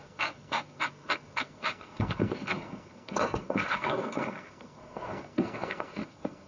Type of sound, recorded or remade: remade